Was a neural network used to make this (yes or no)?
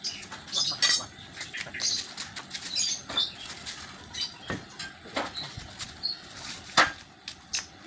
no